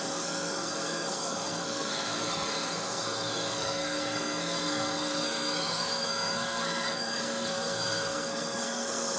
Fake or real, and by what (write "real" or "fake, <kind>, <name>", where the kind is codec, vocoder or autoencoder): fake, codec, SNAC